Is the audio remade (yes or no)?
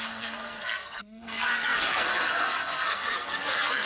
yes